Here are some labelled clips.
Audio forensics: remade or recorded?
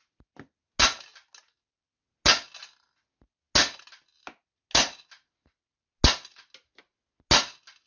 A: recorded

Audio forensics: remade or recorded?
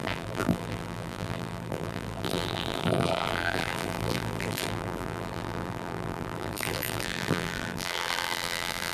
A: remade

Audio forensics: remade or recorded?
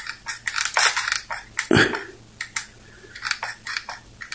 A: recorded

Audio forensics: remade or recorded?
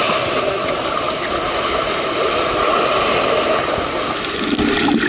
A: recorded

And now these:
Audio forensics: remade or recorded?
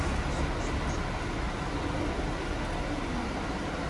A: recorded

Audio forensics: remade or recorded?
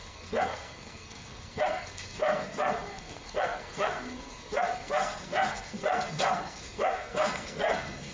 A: remade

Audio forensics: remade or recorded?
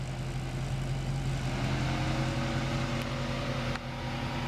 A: recorded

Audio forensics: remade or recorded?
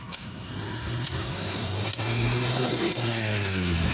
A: remade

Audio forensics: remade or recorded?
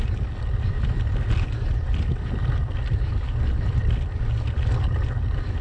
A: recorded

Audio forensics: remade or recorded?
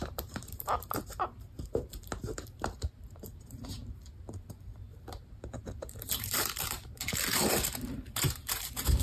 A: remade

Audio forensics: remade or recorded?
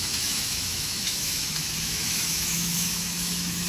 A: remade